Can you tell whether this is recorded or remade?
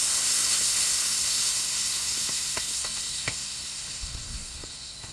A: remade